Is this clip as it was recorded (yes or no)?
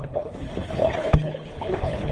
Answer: no